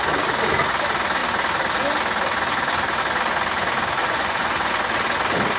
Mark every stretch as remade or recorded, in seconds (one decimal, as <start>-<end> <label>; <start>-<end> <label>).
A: 0.0-4.0 recorded; 4.0-4.7 remade; 4.7-5.6 recorded